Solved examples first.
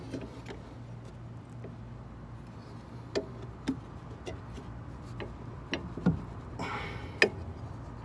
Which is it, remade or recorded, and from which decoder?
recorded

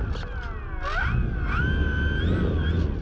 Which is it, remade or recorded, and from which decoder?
recorded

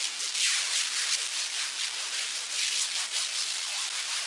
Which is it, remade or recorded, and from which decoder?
recorded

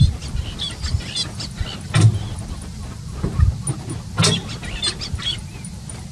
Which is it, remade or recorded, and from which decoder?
recorded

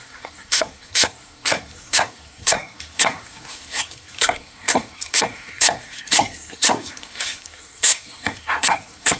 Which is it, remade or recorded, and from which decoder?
remade, codec, SNAC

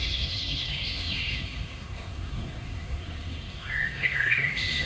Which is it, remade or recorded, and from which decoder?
remade, codec, SNAC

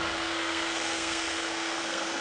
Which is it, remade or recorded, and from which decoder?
remade, codec, SNAC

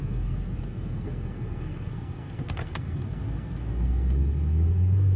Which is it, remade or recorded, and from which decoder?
remade, codec, SNAC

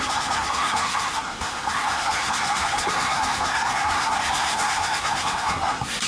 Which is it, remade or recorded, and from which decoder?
remade, codec, SNAC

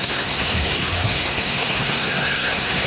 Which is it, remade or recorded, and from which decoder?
remade, codec, SNAC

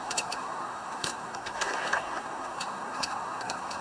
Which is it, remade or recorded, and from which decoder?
remade, codec, SNAC